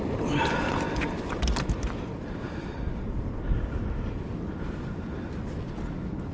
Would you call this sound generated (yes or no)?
no